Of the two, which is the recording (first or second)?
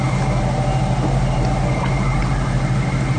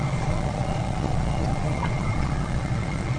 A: first